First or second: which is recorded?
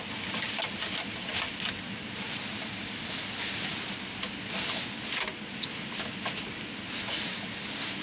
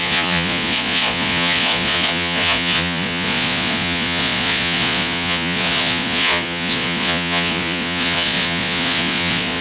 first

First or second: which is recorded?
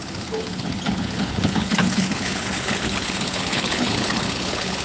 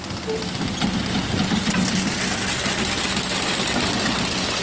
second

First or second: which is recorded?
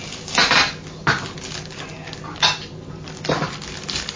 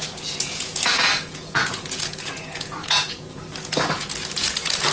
first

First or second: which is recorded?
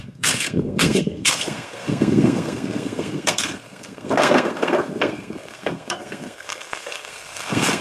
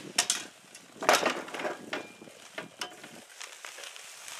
second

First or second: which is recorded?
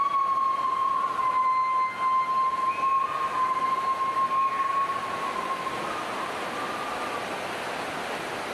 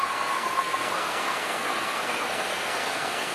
first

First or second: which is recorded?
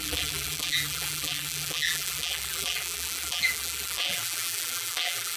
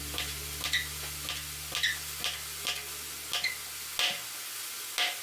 second